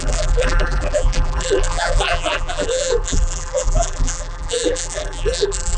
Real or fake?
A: fake